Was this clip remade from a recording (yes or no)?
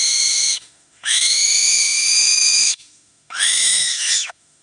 yes